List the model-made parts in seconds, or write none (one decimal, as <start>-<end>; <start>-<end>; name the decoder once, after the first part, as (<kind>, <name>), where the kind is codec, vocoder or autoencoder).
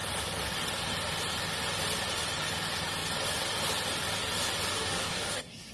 4.7-5.7 (codec, DAC)